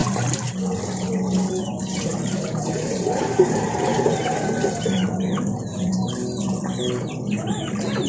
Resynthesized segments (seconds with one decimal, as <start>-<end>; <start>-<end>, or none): 0.0-0.8; 2.1-6.1